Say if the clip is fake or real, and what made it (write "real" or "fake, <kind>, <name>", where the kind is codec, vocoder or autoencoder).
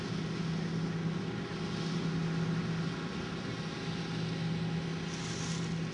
real